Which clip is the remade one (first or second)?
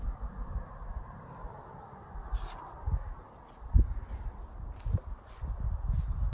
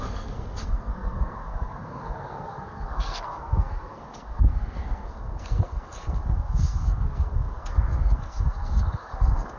second